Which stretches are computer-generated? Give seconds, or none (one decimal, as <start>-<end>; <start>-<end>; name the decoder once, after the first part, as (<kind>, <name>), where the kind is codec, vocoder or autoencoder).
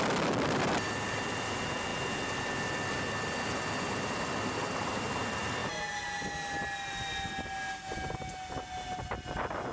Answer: none